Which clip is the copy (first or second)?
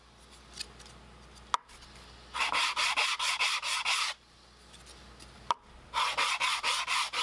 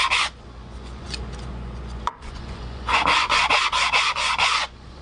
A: second